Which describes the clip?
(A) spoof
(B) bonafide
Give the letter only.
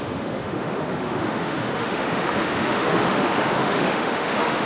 A